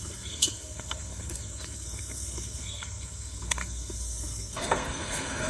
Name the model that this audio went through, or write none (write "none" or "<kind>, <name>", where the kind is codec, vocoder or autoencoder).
codec, SNAC